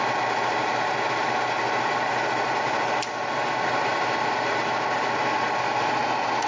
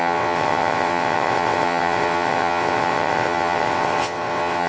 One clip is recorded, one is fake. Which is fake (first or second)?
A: second